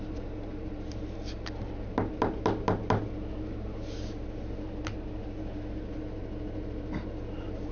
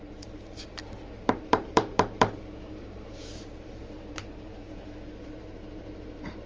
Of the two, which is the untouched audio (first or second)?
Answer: first